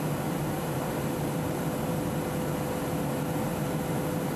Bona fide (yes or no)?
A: yes